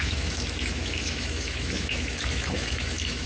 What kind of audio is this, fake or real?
fake